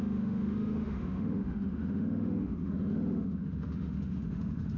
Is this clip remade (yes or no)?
yes